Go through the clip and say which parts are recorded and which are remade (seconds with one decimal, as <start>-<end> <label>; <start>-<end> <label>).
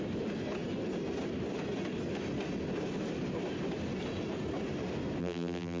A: 0.0-5.2 recorded; 5.2-5.8 remade